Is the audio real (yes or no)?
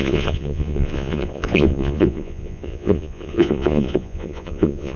no